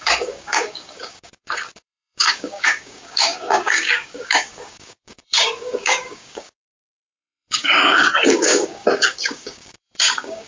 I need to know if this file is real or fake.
fake